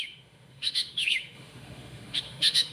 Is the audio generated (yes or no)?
yes